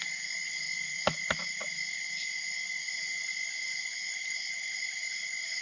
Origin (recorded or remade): recorded